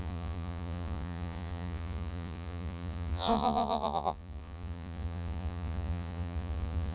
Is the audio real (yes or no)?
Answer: no